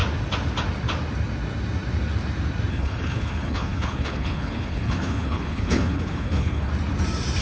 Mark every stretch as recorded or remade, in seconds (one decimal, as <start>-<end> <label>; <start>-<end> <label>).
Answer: 0.0-2.7 recorded; 2.7-6.7 remade; 6.7-7.4 recorded